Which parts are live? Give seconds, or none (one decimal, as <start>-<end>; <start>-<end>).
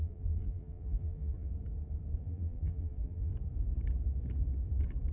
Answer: 1.5-2.2; 3.3-5.1